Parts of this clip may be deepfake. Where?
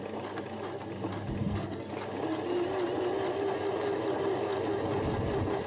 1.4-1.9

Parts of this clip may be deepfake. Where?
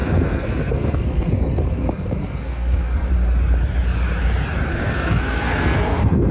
0.0-3.1; 4.7-6.3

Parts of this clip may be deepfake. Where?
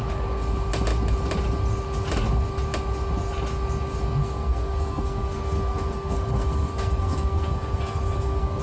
4.2-8.6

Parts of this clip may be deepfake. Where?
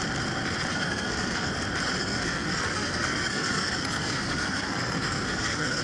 0.7-1.5; 2.0-5.8